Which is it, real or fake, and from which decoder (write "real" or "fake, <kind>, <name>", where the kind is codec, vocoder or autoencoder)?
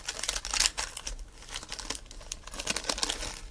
real